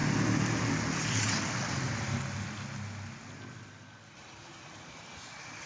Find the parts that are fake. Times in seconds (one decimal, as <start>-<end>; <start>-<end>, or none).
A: none